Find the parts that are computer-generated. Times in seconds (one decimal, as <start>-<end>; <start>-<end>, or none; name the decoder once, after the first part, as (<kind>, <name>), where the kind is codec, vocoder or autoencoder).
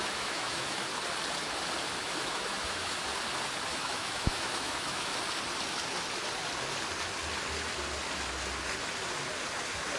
0.0-0.9 (autoencoder, DAC-VAE); 2.0-3.1; 3.7-5.1